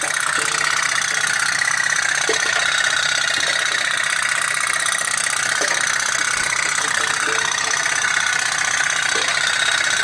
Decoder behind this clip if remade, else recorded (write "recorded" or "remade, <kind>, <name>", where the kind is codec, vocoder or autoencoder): recorded